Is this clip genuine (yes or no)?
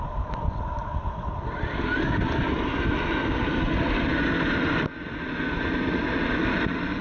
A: yes